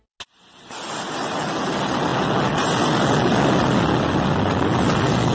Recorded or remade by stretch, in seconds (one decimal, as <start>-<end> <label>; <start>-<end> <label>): 0.0-5.3 recorded